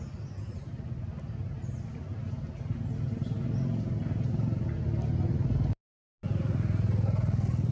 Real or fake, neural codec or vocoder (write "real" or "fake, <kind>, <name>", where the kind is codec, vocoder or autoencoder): real